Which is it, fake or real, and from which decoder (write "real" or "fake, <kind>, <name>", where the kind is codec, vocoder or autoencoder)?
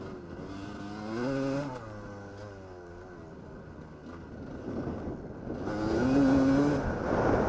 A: real